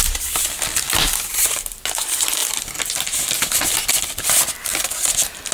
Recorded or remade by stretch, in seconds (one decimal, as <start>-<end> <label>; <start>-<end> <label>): 0.0-4.7 recorded; 4.7-5.5 remade